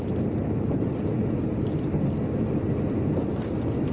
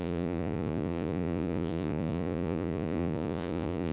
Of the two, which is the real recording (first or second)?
first